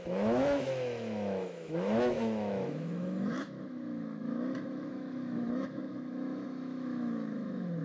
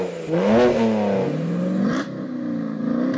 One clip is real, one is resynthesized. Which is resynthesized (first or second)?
first